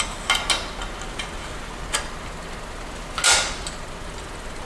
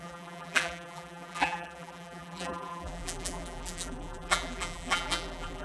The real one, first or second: first